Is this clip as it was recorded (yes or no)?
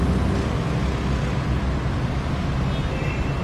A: yes